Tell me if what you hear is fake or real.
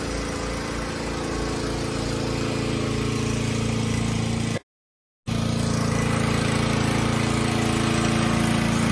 real